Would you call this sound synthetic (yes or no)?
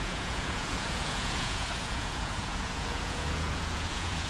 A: yes